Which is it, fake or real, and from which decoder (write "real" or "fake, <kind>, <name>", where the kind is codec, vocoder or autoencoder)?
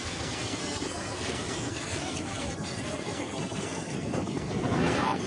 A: fake, codec, SNAC